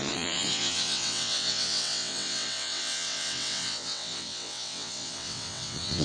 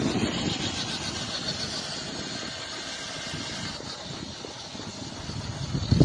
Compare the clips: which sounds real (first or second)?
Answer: second